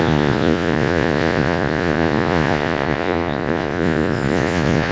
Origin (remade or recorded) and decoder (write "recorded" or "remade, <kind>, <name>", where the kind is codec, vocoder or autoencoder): remade, vocoder, Vocos